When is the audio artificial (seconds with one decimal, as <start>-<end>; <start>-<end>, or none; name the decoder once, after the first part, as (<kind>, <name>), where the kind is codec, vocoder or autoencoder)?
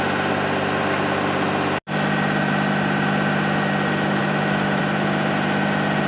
4.2-4.8 (autoencoder, DAC-VAE)